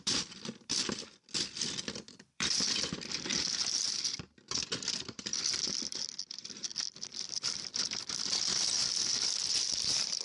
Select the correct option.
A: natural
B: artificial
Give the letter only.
B